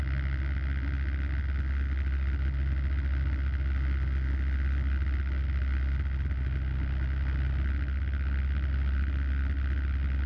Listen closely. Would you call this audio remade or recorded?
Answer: recorded